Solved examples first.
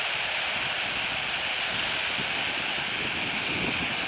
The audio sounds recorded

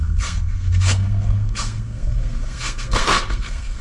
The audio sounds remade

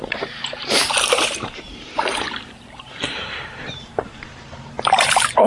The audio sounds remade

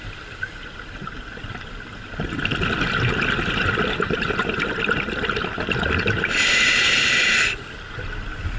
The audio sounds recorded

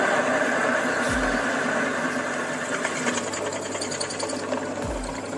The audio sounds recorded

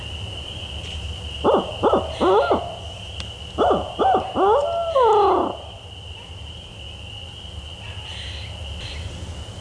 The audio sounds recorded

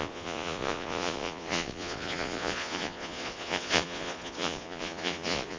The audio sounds remade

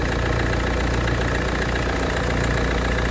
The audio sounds recorded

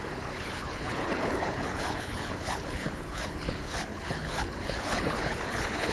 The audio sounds remade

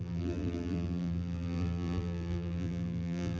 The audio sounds remade